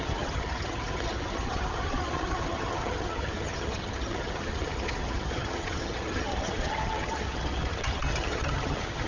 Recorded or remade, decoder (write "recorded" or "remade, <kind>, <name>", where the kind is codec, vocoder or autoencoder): remade, vocoder, HiFi-GAN